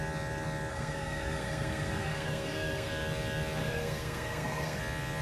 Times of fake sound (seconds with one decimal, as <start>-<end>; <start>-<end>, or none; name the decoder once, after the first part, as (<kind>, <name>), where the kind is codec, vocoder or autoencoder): 0.7-2.9 (codec, SNAC); 3.6-4.8